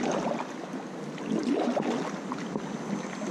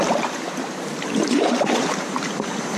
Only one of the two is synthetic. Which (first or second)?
second